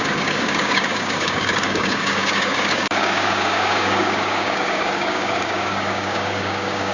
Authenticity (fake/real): fake